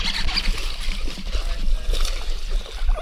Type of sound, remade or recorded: recorded